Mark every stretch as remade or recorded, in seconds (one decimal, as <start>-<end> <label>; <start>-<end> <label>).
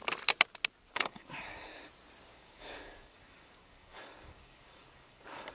0.0-0.9 recorded; 0.9-1.7 remade; 1.7-2.3 recorded; 2.3-5.5 remade